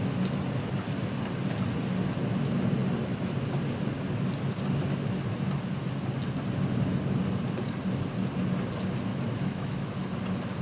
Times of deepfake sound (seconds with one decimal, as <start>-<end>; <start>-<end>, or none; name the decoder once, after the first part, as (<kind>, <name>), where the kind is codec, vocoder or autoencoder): 9.1-10.1 (autoencoder, DAC-VAE)